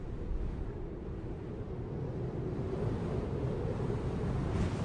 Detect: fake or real real